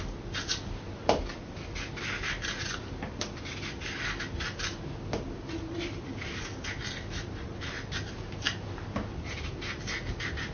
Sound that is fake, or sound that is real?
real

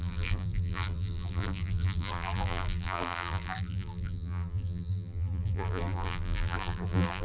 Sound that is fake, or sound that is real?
fake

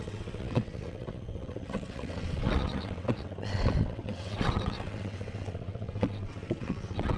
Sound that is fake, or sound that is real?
fake